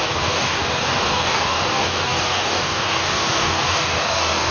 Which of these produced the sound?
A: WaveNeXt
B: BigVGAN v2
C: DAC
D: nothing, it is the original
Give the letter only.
C